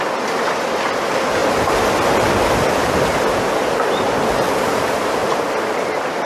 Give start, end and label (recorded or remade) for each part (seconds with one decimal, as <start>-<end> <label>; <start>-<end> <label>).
0.0-6.3 recorded